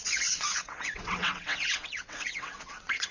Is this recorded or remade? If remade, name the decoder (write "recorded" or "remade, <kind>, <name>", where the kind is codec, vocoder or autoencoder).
remade, vocoder, WaveNeXt